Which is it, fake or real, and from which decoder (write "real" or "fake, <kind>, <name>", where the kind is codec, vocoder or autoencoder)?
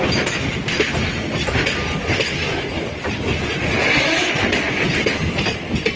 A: real